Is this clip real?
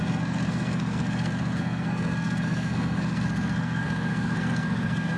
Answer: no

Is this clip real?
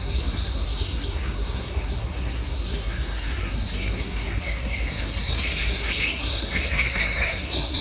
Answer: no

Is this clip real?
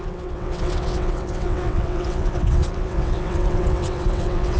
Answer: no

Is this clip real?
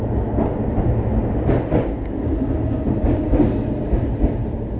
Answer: yes